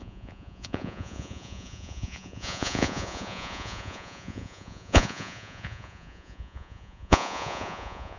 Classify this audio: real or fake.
fake